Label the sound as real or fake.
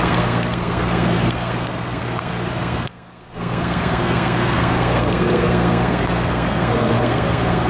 fake